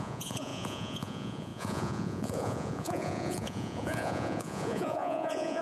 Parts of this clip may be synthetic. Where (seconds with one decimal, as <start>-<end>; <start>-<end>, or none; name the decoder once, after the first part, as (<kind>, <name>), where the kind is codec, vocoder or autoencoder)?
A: 0.0-5.6 (vocoder, Vocos)